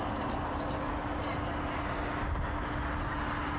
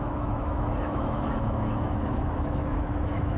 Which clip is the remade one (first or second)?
second